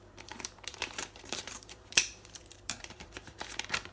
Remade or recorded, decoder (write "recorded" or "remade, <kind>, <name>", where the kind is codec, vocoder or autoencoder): remade, vocoder, BigVGAN v2